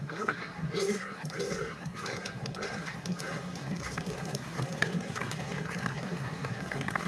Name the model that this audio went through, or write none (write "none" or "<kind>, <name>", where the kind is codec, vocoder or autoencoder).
codec, SNAC